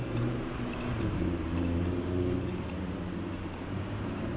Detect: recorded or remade remade